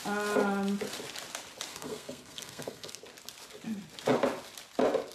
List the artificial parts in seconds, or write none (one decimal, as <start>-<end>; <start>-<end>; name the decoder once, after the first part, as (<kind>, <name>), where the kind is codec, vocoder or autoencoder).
1.7-3.0 (codec, SNAC)